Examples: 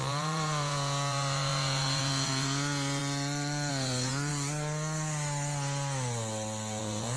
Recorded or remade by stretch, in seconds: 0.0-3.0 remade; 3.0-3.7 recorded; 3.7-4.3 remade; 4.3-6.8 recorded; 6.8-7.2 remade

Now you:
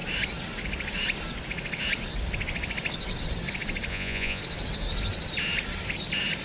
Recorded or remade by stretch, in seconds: 0.0-3.9 recorded; 3.9-4.4 remade; 4.4-6.4 recorded

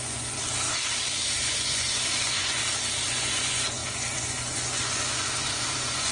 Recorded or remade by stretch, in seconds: 0.0-0.4 remade; 0.4-1.4 recorded; 1.4-2.6 remade; 2.6-3.1 recorded; 3.1-6.1 remade

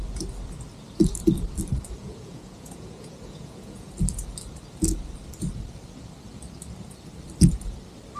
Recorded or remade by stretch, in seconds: 0.0-2.0 recorded; 2.0-3.9 remade; 3.9-8.2 recorded

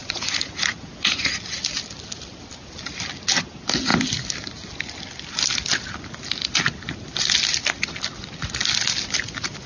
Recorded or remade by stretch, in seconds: 0.0-1.3 remade; 1.3-9.7 recorded

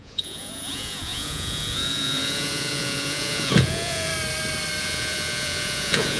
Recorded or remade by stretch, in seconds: 0.0-4.1 remade; 4.1-4.8 recorded; 4.8-6.2 remade